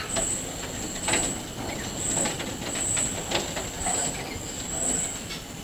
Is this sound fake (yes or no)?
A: no